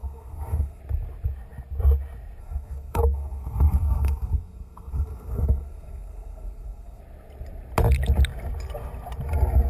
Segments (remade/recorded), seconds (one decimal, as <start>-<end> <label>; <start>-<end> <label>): 0.0-0.8 remade; 0.8-2.4 recorded; 2.4-7.0 remade; 7.0-9.7 recorded